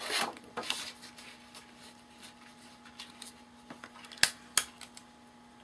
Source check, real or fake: real